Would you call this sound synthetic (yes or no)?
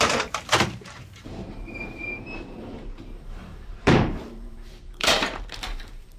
yes